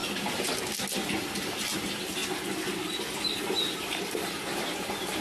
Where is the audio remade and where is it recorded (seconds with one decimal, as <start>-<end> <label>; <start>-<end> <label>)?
0.0-1.1 recorded; 1.1-2.2 remade; 2.2-3.4 recorded; 3.4-5.2 remade